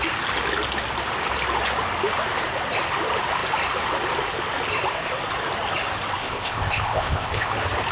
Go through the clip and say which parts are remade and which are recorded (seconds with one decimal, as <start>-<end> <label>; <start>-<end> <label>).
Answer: 0.0-6.2 recorded; 6.2-7.5 remade; 7.5-7.9 recorded